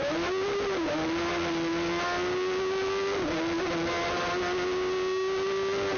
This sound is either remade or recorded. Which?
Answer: recorded